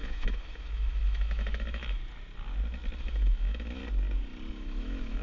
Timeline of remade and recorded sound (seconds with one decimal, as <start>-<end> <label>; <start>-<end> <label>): 0.0-2.0 remade; 2.0-3.0 recorded; 3.0-3.8 remade; 3.8-4.5 recorded; 4.5-5.2 remade